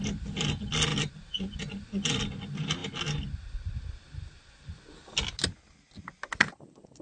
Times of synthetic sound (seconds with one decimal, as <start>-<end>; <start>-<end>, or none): none